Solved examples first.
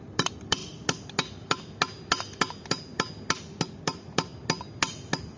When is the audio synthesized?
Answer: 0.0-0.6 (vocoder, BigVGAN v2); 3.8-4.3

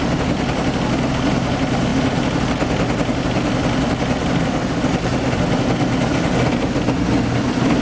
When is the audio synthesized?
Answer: none

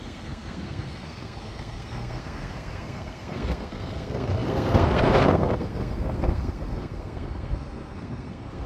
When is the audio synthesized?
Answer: 0.0-8.7 (codec, SNAC)

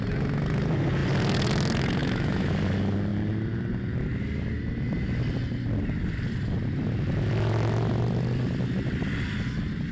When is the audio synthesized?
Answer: 2.0-2.5 (autoencoder, DAC-VAE)